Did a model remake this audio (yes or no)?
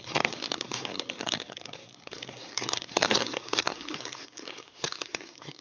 yes